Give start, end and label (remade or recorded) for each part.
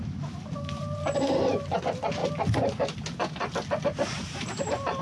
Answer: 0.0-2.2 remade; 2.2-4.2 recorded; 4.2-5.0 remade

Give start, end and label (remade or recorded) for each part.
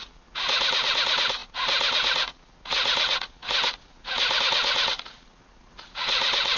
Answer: 0.0-6.6 remade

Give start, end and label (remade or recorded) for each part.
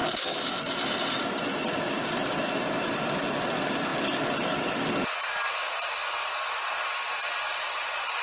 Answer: 0.0-2.6 remade; 2.6-6.0 recorded; 6.0-6.7 remade; 6.7-7.5 recorded; 7.5-8.2 remade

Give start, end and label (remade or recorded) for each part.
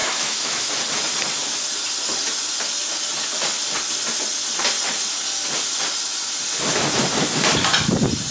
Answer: 0.0-0.7 remade; 0.7-8.3 recorded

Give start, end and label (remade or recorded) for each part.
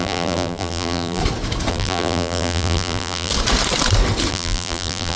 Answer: 0.0-1.2 remade; 1.2-1.7 recorded; 1.7-3.3 remade; 3.3-4.3 recorded; 4.3-5.2 remade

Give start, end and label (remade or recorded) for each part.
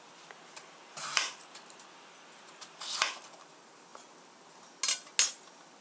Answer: 0.0-5.8 recorded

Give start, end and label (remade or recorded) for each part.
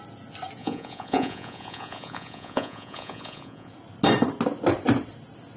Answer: 0.0-0.6 recorded; 0.6-3.7 remade; 3.7-5.6 recorded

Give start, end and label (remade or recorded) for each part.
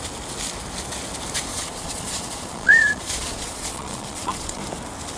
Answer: 0.0-1.5 recorded; 1.5-4.6 remade; 4.6-5.2 recorded